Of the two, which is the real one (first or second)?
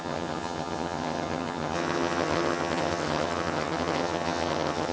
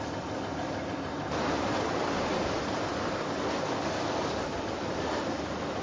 second